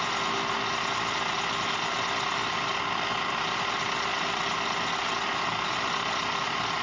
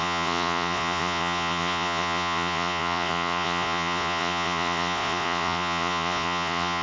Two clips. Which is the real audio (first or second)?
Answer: first